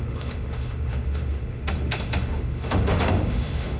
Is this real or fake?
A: fake